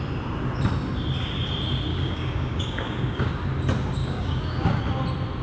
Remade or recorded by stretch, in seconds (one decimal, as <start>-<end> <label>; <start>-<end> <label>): 0.0-1.9 recorded; 1.9-3.3 remade; 3.3-4.0 recorded; 4.0-4.8 remade; 4.8-5.4 recorded